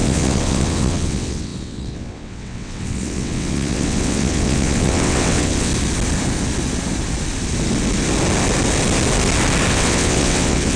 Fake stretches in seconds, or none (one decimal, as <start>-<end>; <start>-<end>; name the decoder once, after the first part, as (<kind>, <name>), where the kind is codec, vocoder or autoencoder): 0.0-5.7 (vocoder, WaveNeXt); 9.7-10.8